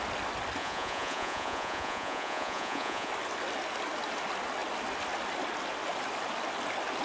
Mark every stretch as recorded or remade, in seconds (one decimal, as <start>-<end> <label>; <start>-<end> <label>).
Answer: 0.0-0.6 recorded; 0.6-3.1 remade; 3.1-7.0 recorded